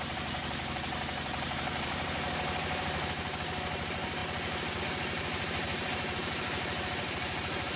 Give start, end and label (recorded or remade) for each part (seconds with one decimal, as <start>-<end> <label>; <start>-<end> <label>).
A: 0.0-4.2 remade; 4.2-4.8 recorded; 4.8-7.8 remade